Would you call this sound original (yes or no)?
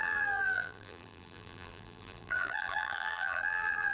no